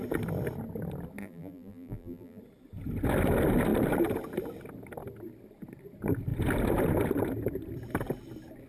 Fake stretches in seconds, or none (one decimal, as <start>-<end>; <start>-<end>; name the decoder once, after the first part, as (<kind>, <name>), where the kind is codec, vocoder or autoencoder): 1.2-2.4 (vocoder, BigVGAN v2)